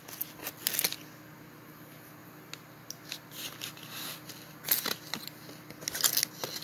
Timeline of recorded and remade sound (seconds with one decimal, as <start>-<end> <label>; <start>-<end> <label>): 0.0-6.6 recorded